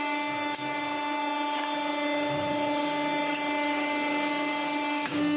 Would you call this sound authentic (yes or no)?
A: no